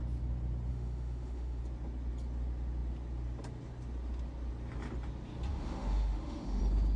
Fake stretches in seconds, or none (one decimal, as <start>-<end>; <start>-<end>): 0.7-1.6; 5.5-6.6